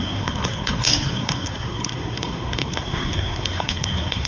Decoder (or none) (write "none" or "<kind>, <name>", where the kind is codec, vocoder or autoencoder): codec, SNAC